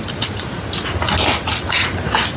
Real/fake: real